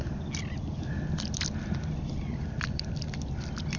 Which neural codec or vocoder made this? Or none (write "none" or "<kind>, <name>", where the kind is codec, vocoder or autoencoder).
none